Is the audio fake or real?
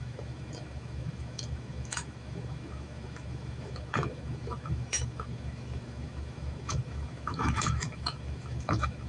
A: fake